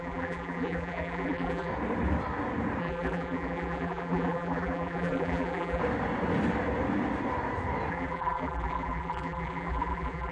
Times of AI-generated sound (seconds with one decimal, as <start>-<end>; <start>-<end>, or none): 0.0-1.7; 2.8-5.8; 7.9-10.3

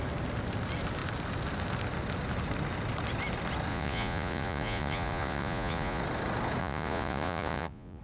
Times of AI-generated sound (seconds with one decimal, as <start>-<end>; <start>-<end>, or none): 3.7-6.0; 6.6-8.0

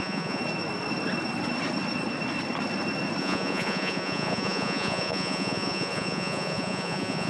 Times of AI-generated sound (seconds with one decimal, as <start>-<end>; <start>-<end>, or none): 0.0-0.4; 3.2-7.3

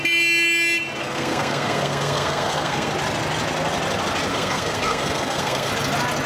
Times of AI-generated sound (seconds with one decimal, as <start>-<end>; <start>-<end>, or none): 1.0-2.9; 4.3-5.7

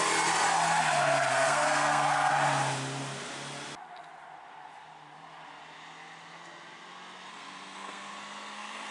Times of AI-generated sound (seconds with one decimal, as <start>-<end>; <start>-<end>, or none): 1.3-2.3; 7.3-8.9

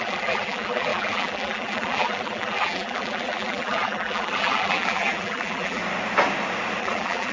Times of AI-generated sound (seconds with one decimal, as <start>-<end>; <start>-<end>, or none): 0.0-5.8; 6.8-7.3

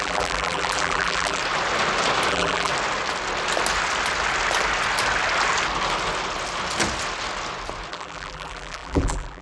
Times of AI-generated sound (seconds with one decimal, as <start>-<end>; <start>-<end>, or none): 0.0-1.4; 2.3-2.7; 7.9-9.4